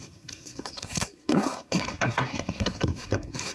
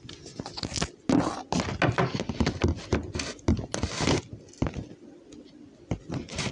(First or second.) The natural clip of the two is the second